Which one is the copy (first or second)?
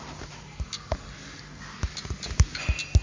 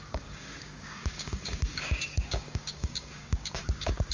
second